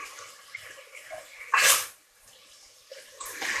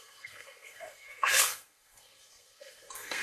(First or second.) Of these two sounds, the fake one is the second